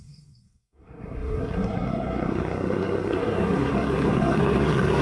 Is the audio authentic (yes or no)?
no